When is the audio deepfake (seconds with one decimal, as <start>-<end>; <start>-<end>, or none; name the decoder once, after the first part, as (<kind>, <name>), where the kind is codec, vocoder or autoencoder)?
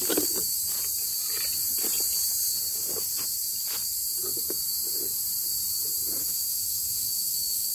6.2-7.7 (autoencoder, DAC-VAE)